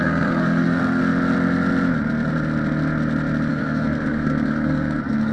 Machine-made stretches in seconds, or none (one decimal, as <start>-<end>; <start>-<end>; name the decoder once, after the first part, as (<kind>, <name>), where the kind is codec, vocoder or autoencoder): 0.0-1.0 (codec, SNAC); 3.5-5.3